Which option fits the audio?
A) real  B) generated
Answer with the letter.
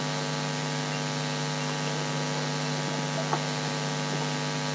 A